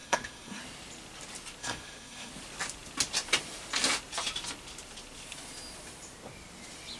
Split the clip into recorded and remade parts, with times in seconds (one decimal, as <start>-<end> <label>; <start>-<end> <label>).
0.0-0.6 remade; 0.6-1.6 recorded; 1.6-2.3 remade; 2.3-7.0 recorded